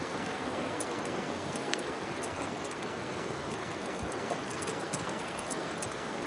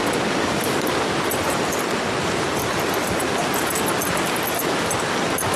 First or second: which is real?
second